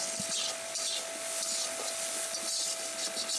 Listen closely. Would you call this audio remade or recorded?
recorded